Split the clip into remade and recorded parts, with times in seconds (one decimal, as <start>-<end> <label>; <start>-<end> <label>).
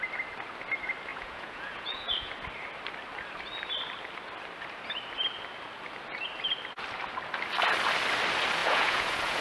0.0-1.1 recorded; 1.1-2.3 remade; 2.3-8.6 recorded; 8.6-9.4 remade